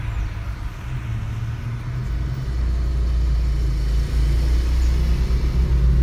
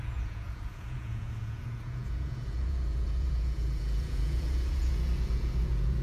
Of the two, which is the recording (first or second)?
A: first